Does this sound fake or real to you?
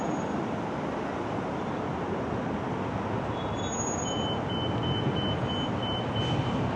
real